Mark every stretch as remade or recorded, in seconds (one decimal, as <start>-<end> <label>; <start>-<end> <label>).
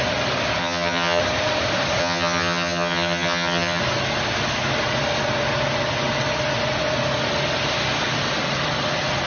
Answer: 0.0-0.6 recorded; 0.6-1.2 remade; 1.2-2.0 recorded; 2.0-3.8 remade; 3.8-9.3 recorded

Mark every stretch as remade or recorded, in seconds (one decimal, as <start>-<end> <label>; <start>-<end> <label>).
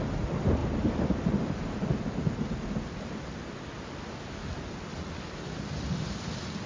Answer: 0.0-6.7 recorded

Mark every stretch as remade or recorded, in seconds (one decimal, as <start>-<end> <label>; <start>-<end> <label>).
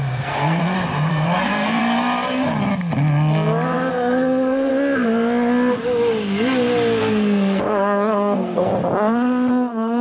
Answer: 0.0-0.6 remade; 0.6-1.1 recorded; 1.1-1.8 remade; 1.8-3.9 recorded; 3.9-4.7 remade; 4.7-7.0 recorded; 7.0-8.7 remade; 8.7-9.5 recorded; 9.5-10.0 remade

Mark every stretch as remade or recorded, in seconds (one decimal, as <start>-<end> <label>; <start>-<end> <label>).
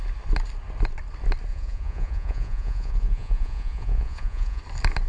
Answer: 0.0-1.5 recorded; 1.5-4.6 remade; 4.6-5.1 recorded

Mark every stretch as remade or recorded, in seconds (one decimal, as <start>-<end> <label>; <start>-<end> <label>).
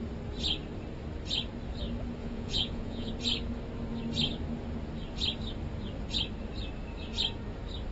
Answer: 0.0-2.2 recorded; 2.2-3.1 remade; 3.1-7.9 recorded